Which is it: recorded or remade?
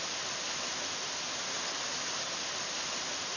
recorded